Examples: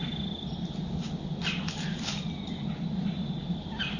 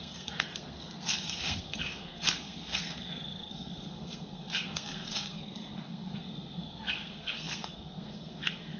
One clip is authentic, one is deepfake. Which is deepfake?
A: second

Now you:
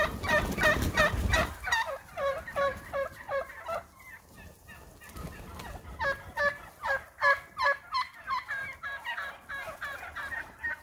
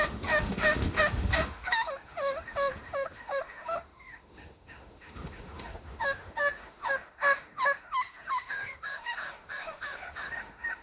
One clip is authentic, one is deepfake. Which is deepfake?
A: second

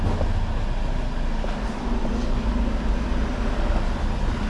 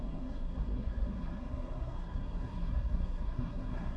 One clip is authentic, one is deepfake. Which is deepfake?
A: second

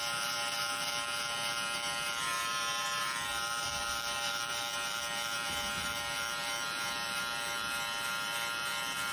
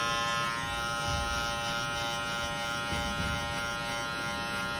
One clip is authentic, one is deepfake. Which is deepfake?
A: first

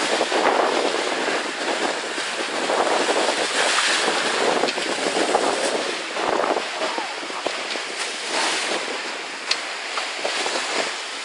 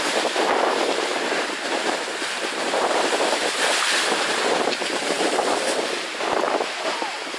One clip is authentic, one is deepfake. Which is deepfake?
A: second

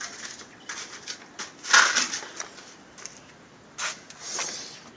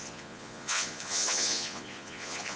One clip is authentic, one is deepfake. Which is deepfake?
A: second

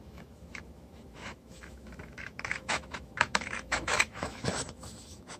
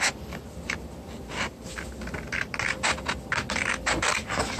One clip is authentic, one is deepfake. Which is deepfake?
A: first